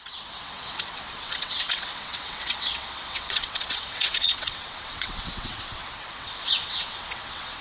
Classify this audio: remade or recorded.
remade